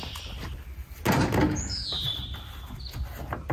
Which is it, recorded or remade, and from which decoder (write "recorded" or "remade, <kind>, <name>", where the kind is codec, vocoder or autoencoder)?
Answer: recorded